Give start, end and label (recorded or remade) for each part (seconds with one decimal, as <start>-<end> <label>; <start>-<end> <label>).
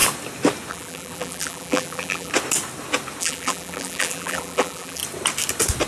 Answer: 0.0-0.7 recorded; 0.7-2.3 remade; 2.3-3.2 recorded; 3.2-5.0 remade; 5.0-5.9 recorded